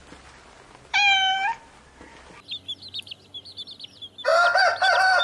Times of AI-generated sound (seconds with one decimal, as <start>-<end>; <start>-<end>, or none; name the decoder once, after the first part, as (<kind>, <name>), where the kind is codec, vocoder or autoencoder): none